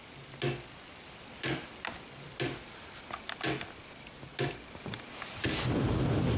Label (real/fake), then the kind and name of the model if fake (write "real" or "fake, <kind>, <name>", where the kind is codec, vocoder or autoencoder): real